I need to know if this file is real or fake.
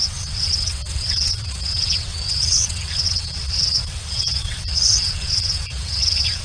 fake